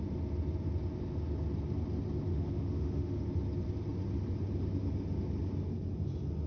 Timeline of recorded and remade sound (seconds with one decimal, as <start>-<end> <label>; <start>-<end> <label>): 0.0-2.3 recorded; 2.3-3.3 remade; 3.3-6.5 recorded